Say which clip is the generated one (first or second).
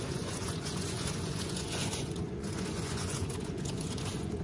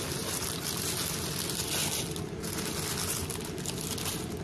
first